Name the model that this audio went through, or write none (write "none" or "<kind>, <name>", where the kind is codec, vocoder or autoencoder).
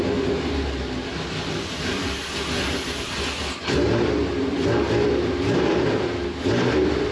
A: none